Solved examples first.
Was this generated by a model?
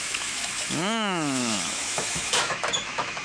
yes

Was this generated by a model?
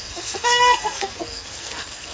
yes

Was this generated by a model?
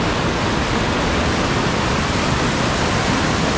no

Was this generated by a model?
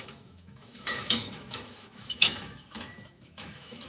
yes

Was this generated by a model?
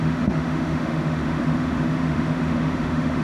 yes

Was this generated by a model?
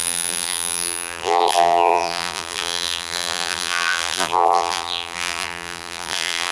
yes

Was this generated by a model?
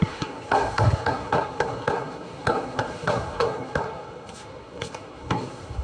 yes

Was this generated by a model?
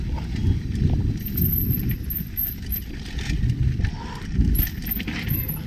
no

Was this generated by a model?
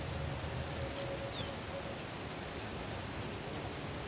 no